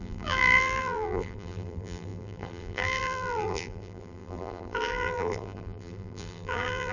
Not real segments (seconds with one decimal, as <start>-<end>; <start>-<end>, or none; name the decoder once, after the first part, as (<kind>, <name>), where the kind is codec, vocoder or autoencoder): 0.0-6.9 (vocoder, BigVGAN v2)